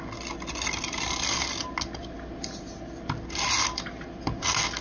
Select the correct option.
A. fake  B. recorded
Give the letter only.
B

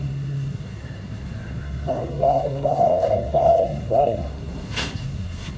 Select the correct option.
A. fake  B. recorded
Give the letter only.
A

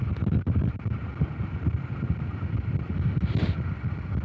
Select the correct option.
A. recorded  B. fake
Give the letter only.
A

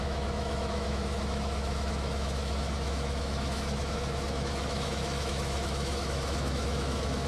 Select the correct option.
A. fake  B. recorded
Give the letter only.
A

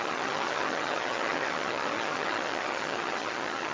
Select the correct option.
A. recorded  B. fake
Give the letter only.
B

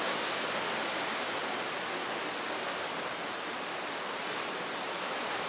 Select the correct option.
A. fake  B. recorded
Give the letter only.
B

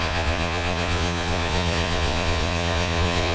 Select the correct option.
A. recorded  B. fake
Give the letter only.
B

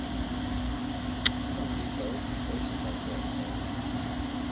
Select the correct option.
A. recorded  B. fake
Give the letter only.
A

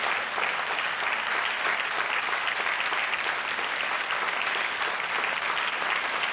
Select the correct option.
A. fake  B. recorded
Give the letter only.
B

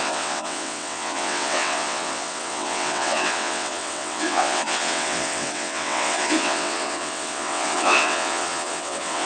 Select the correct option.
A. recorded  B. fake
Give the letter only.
B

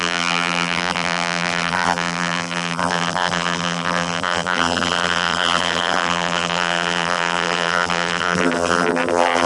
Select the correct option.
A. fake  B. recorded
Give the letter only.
A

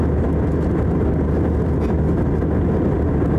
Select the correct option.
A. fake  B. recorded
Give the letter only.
B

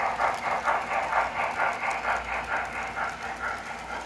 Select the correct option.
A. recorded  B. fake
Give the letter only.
A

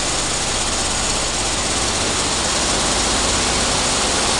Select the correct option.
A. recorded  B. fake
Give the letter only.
A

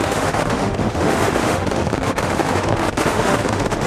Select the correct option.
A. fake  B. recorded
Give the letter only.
A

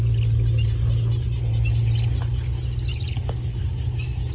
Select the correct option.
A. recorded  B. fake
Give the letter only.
A